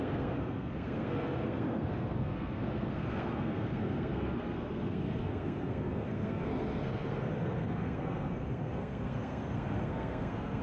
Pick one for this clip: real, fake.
fake